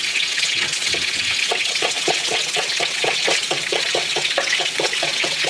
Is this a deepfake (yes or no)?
yes